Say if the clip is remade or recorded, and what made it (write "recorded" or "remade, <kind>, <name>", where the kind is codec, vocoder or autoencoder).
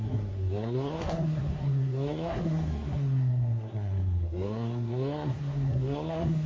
remade, codec, SNAC